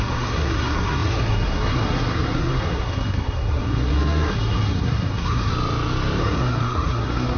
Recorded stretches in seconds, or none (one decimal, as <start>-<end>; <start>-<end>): 5.5-6.2